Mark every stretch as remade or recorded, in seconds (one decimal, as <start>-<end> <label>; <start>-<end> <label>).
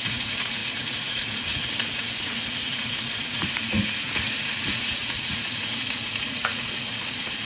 0.0-7.5 remade